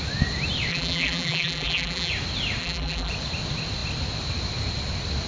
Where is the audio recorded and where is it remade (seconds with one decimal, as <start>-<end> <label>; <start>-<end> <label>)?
0.0-0.7 recorded; 0.7-2.1 remade; 2.1-2.6 recorded; 2.6-3.1 remade; 3.1-5.3 recorded